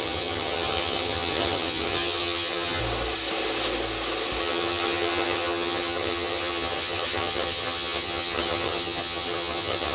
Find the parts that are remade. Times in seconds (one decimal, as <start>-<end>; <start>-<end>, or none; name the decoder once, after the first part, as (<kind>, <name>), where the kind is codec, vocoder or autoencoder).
0.0-2.8 (vocoder, HiFi-GAN); 4.4-9.9